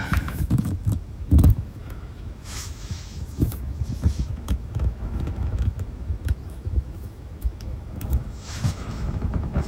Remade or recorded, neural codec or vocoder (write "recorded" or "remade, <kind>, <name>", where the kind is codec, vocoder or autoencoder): remade, autoencoder, DAC-VAE